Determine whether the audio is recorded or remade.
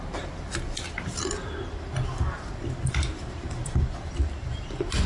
recorded